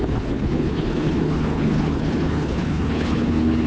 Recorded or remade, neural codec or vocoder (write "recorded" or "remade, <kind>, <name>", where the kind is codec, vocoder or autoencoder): remade, codec, HILCodec